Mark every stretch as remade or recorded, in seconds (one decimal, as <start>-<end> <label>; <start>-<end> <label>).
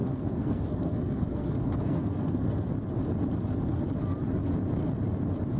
0.0-2.7 remade; 2.7-5.6 recorded